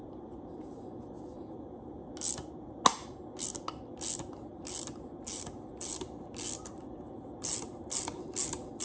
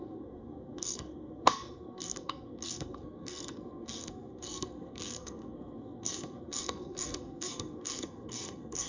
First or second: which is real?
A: first